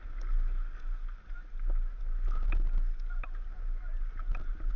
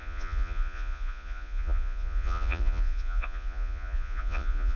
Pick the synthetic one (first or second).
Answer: second